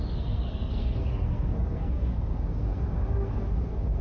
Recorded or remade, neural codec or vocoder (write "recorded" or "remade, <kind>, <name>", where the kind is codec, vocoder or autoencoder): remade, codec, SNAC